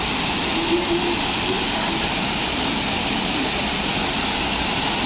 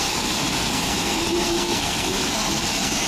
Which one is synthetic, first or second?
second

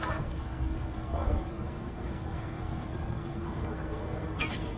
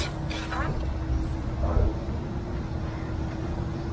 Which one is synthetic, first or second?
first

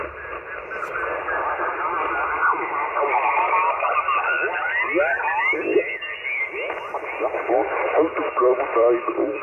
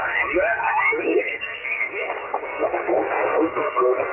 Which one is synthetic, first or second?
second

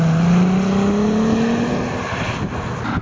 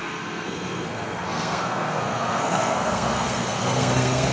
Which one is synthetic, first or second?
second